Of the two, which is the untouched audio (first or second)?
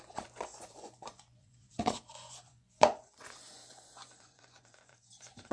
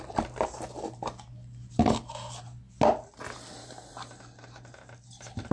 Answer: second